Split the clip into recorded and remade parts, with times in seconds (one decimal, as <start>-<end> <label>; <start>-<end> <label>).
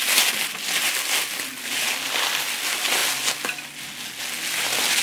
0.0-5.0 recorded